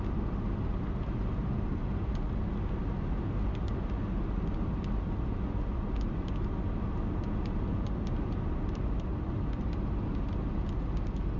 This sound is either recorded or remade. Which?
recorded